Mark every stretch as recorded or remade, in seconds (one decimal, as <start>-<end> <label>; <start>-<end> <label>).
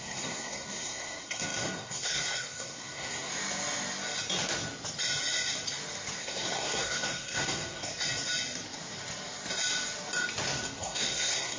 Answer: 0.0-3.3 remade; 3.3-6.2 recorded; 6.2-7.9 remade; 7.9-10.8 recorded; 10.8-11.6 remade